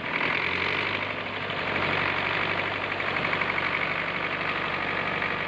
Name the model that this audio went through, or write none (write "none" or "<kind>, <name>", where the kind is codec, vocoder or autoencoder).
vocoder, BigVGAN v2